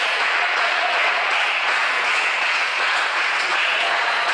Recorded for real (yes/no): no